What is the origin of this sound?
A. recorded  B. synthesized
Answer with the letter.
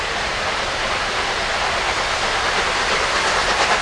A